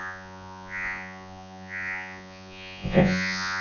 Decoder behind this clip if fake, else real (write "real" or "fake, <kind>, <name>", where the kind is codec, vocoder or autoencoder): fake, vocoder, Vocos